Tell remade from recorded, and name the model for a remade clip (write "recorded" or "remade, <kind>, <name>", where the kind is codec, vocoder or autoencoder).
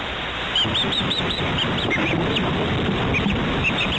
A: recorded